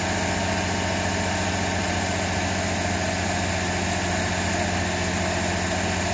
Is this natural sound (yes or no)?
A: yes